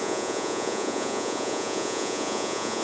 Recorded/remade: remade